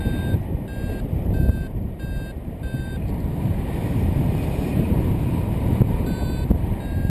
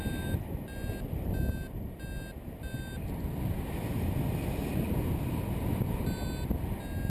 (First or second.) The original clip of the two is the second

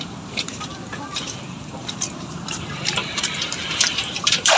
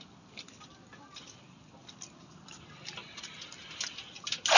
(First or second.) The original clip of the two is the second